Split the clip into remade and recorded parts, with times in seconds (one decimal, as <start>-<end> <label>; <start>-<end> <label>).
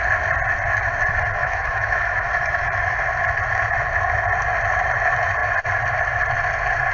0.0-1.4 recorded; 1.4-2.3 remade; 2.3-6.9 recorded